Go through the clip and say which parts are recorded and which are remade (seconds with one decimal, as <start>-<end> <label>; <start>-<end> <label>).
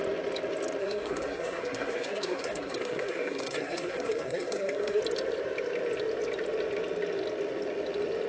0.0-0.8 recorded; 0.8-5.0 remade; 5.0-8.3 recorded